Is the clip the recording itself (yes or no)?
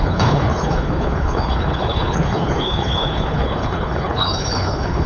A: no